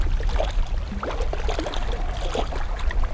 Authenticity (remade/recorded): recorded